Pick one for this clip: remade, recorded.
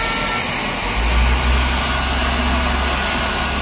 recorded